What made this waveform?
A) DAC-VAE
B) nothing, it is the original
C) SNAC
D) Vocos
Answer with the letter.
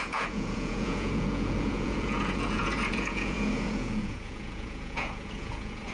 D